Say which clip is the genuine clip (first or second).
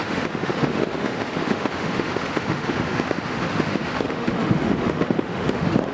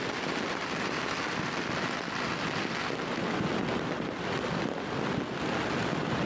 second